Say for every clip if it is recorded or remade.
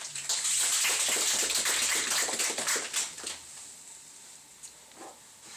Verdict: recorded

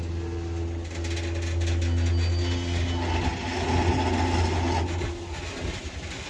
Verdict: recorded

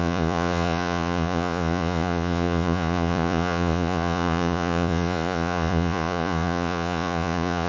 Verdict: remade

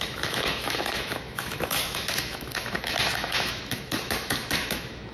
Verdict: remade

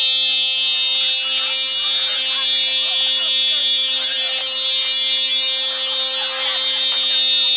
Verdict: recorded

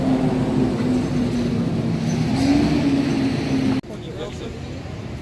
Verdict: recorded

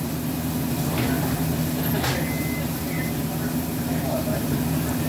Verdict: recorded